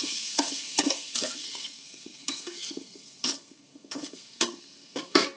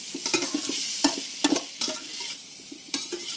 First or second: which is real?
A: second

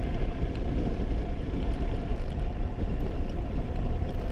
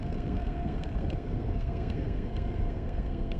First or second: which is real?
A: first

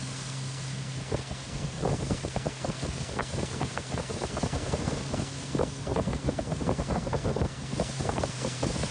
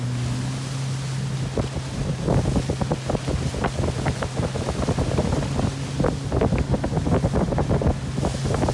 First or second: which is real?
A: second